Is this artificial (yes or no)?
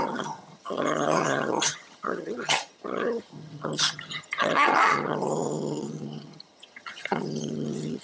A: yes